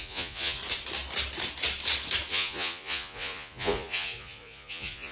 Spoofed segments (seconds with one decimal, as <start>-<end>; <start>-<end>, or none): 0.0-0.6; 2.3-5.1